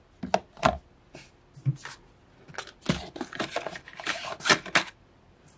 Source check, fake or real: real